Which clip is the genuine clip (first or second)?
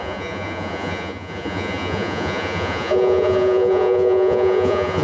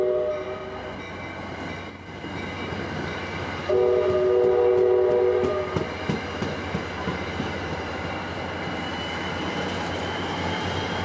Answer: second